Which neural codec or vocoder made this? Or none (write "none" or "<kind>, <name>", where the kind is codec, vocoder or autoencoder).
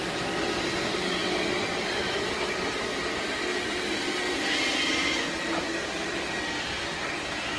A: none